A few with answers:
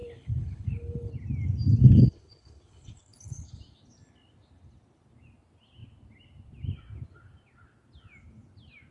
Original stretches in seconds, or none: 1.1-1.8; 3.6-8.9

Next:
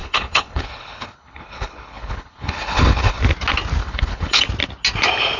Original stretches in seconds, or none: 3.2-3.8; 4.4-5.4

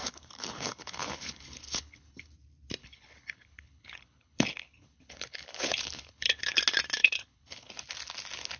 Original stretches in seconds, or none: 2.3-2.8; 6.6-7.0; 7.7-8.6